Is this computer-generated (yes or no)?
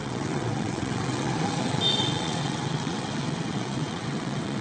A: yes